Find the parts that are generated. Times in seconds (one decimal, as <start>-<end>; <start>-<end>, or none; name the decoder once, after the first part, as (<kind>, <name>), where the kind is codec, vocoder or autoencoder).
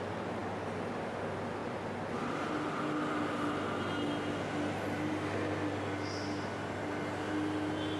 none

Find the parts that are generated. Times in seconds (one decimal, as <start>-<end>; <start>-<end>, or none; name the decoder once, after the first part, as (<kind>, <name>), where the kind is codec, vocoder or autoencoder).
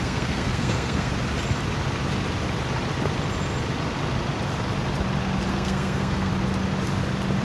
0.0-1.1 (codec, SNAC); 5.5-6.3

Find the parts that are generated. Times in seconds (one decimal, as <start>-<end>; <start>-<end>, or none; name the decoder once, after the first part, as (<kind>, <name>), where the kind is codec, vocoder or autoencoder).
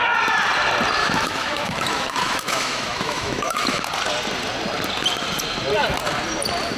1.0-3.8 (autoencoder, DAC-VAE)